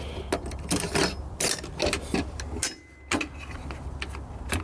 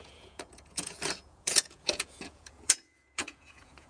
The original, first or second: first